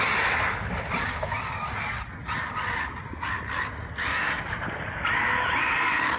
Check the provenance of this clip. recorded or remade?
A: recorded